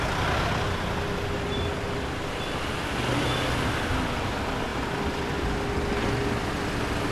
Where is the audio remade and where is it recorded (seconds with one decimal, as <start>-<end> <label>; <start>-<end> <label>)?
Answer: 0.0-7.1 recorded